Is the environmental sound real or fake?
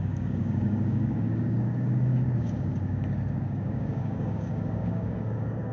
fake